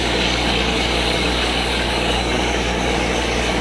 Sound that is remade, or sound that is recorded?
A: remade